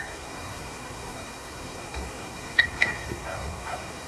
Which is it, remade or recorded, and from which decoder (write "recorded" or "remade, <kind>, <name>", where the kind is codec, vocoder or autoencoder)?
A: remade, codec, SNAC